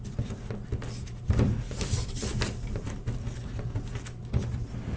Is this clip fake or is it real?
real